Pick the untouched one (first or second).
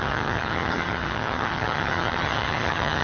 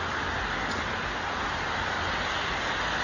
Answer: second